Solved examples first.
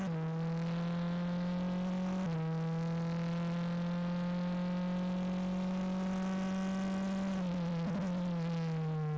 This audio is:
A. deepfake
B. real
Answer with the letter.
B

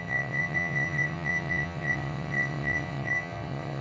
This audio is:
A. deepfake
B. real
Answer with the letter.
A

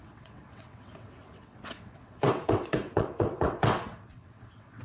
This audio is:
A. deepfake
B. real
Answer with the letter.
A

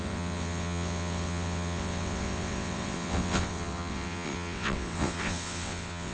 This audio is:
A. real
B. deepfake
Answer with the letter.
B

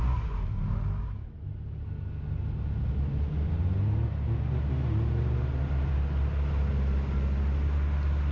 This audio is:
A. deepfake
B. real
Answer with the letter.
B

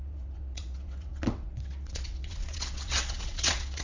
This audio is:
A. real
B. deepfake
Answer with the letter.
B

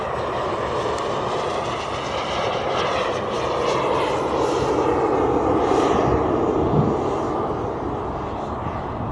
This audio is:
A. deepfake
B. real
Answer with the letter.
B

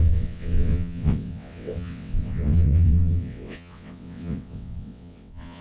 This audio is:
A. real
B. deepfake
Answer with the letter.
B